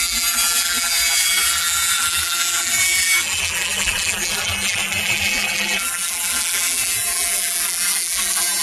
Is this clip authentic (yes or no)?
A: no